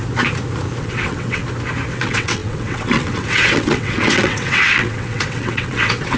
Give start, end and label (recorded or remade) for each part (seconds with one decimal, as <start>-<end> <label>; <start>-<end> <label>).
0.0-0.8 recorded; 0.8-1.4 remade; 1.4-1.9 recorded; 1.9-6.2 remade

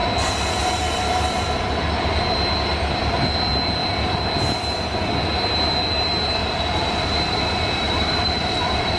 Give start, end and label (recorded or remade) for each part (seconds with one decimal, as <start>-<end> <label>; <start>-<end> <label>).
0.0-6.4 recorded; 6.4-9.0 remade